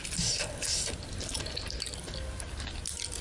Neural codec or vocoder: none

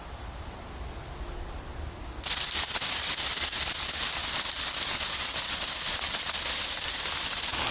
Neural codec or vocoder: none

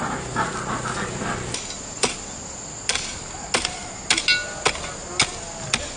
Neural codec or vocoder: none